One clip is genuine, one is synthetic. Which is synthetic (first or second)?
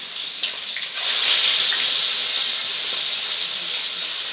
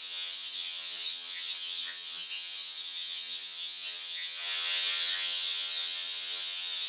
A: second